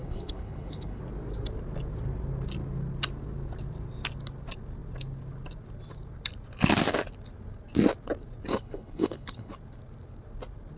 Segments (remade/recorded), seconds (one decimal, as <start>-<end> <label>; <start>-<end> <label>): 0.0-1.0 remade; 1.0-8.5 recorded; 8.5-9.5 remade; 9.5-10.8 recorded